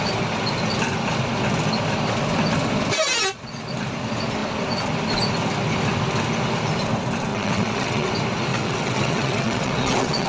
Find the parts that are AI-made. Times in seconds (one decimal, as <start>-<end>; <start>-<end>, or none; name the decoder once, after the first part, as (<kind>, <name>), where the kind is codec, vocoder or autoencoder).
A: 7.3-8.1 (vocoder, WaveNeXt); 8.5-10.3